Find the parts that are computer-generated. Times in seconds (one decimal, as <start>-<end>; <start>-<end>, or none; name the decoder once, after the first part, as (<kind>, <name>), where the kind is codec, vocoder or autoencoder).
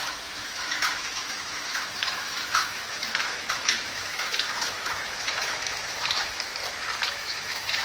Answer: 0.0-6.5 (autoencoder, DAC-VAE); 7.1-7.8